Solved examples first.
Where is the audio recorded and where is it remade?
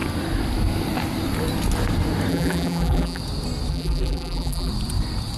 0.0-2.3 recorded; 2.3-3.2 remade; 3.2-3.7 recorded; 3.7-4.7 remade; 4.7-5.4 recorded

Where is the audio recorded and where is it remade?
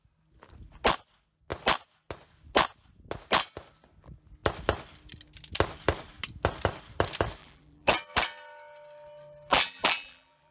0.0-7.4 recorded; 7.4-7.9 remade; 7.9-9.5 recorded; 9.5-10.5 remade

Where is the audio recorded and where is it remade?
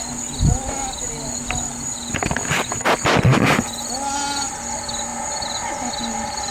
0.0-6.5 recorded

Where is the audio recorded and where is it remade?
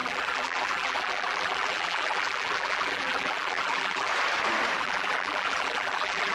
0.0-4.1 remade; 4.1-4.8 recorded; 4.8-6.3 remade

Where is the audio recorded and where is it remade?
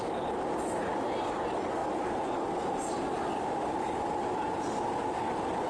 0.0-1.8 remade; 1.8-2.3 recorded; 2.3-5.7 remade